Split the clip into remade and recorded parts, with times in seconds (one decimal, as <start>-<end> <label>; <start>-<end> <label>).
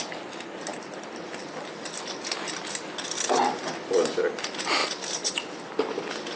0.0-0.7 recorded; 0.7-2.0 remade; 2.0-4.8 recorded; 4.8-6.0 remade; 6.0-6.4 recorded